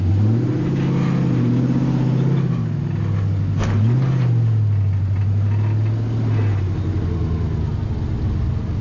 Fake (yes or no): no